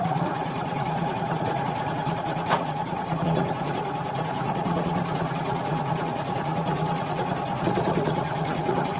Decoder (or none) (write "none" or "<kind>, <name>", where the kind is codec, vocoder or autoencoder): vocoder, Vocos